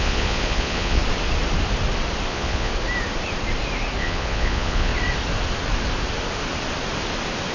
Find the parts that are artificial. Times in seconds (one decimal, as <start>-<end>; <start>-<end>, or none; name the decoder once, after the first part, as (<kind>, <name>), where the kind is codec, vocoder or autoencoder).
0.0-1.0 (vocoder, Vocos); 2.3-2.7; 4.0-4.9